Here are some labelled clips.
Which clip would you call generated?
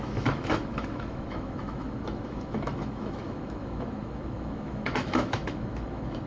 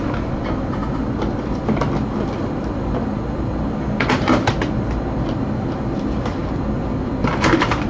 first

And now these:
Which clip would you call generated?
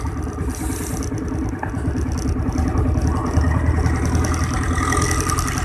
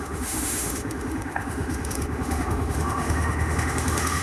second